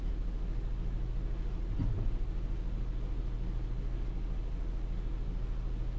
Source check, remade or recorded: recorded